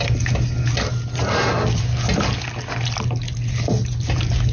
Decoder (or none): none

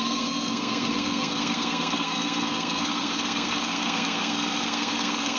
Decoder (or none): codec, SNAC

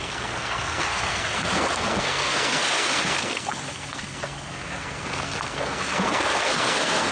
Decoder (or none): codec, SNAC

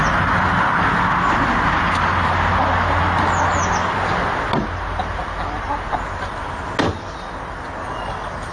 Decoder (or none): none